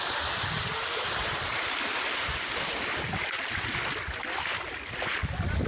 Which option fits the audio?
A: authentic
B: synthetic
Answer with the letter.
A